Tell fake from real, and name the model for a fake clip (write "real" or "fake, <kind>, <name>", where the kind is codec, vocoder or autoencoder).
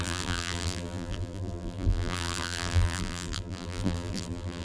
fake, vocoder, BigVGAN v2